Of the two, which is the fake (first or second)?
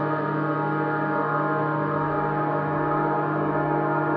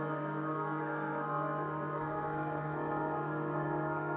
second